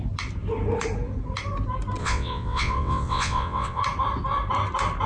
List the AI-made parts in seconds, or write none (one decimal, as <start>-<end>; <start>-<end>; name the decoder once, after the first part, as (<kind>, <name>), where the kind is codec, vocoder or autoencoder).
2.0-3.8 (vocoder, WaveNeXt)